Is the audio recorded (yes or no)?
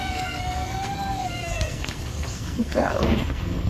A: no